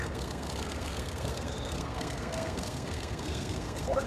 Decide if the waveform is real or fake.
fake